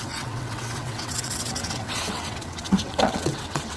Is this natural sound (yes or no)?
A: no